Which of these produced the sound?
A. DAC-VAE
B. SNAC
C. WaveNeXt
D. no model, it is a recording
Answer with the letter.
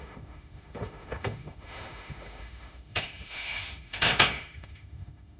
A